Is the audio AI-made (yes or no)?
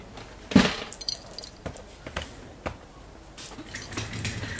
no